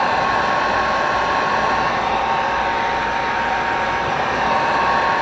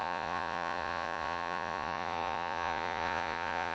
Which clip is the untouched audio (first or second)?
first